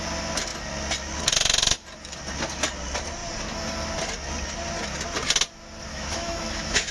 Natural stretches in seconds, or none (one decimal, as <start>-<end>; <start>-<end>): 0.0-5.9